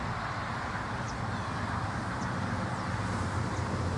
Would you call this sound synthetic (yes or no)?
yes